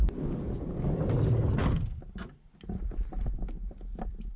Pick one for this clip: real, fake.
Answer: real